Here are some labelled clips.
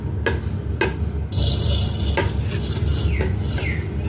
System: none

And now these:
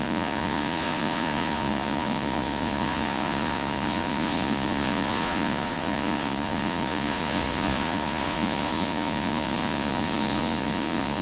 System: vocoder, Vocos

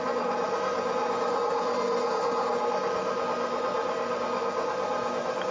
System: none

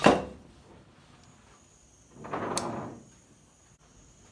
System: none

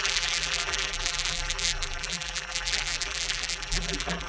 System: vocoder, BigVGAN v2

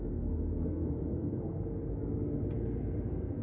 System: codec, SNAC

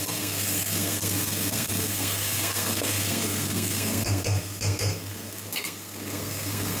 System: codec, SNAC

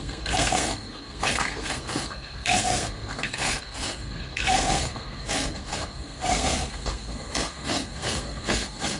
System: codec, SNAC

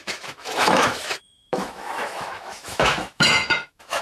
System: autoencoder, DAC-VAE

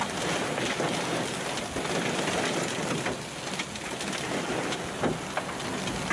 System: none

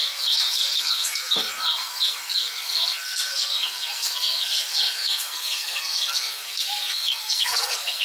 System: codec, SNAC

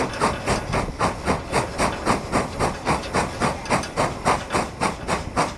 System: none